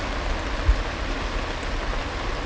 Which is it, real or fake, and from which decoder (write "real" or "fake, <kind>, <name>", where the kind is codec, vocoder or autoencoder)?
real